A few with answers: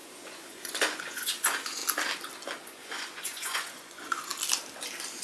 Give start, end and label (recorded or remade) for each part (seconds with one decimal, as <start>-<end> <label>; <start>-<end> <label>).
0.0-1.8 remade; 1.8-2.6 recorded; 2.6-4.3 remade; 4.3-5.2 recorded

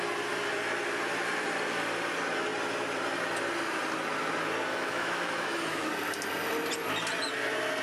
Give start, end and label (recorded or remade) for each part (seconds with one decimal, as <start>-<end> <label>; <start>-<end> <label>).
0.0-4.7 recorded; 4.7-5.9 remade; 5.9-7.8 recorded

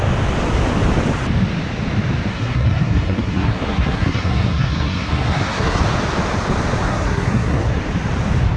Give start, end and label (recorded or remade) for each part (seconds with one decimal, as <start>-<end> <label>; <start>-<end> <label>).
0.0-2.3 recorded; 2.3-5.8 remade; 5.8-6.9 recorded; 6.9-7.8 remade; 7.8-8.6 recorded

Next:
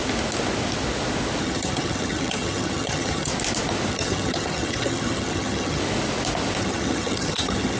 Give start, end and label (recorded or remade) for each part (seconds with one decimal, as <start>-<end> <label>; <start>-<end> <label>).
0.0-1.4 recorded; 1.4-3.3 remade; 3.3-3.9 recorded; 3.9-5.8 remade; 5.8-6.6 recorded; 6.6-7.8 remade

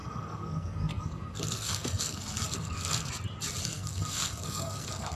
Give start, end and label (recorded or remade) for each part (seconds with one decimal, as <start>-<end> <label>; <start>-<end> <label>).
0.0-3.1 remade; 3.1-3.6 recorded; 3.6-5.2 remade

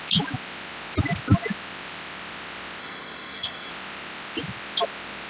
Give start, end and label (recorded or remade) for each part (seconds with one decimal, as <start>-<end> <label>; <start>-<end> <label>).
0.0-2.8 recorded; 2.8-3.7 remade; 3.7-5.3 recorded

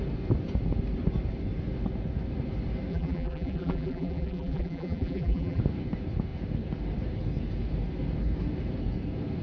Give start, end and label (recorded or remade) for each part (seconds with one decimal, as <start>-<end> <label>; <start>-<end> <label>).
0.0-2.9 recorded; 2.9-5.6 remade; 5.6-9.4 recorded